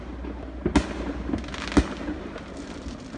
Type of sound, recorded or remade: recorded